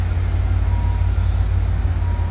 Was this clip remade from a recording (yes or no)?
no